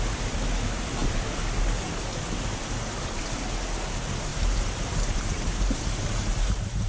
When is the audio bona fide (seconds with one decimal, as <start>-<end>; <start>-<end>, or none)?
0.0-4.3; 5.8-6.2